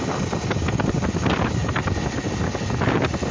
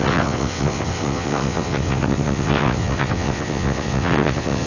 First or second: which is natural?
first